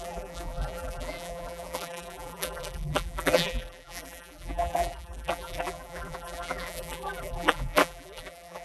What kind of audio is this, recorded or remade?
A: remade